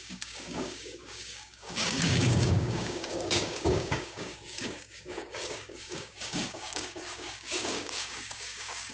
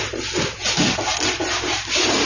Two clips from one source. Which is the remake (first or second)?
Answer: first